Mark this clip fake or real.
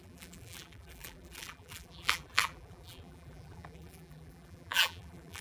fake